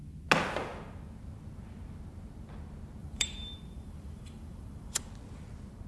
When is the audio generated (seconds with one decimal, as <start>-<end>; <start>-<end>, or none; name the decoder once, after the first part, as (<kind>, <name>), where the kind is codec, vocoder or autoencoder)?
3.0-5.1 (vocoder, BigVGAN v2)